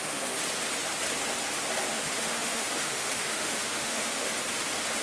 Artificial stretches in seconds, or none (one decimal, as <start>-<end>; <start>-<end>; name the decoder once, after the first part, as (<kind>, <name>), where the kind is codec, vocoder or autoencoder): 0.0-0.4 (autoencoder, DAC-VAE); 1.9-4.3